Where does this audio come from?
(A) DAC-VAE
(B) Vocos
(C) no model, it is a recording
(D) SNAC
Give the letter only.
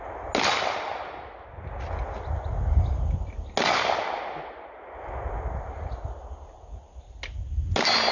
C